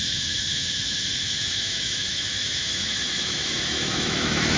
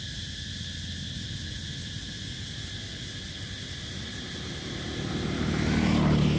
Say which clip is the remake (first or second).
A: first